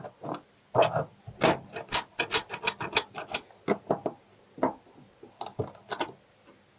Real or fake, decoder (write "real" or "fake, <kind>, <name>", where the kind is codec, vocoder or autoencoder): real